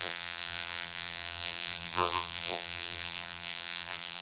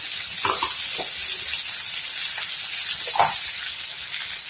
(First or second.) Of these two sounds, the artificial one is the first